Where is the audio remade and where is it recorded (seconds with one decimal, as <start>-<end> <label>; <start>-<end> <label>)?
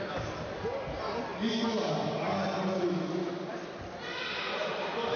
0.0-5.2 recorded